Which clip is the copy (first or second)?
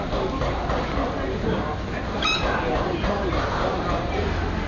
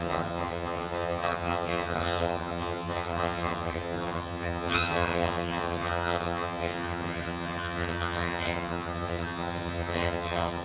second